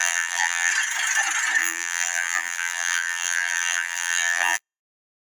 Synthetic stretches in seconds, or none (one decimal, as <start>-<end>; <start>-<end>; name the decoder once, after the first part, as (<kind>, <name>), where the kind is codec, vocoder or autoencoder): 0.0-0.7 (vocoder, BigVGAN v2); 1.6-4.8